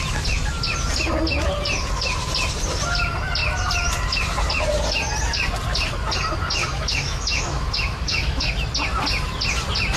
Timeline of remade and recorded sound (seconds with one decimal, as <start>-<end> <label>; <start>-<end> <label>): 0.0-6.6 recorded; 6.6-8.5 remade; 8.5-10.0 recorded